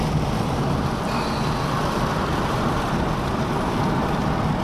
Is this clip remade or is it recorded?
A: recorded